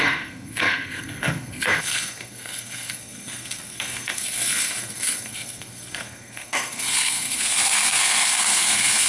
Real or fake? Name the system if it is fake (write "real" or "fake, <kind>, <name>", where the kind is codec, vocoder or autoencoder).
fake, codec, SNAC